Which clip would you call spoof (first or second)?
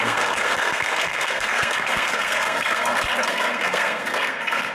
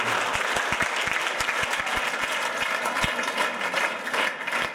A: first